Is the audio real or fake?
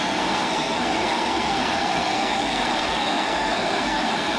fake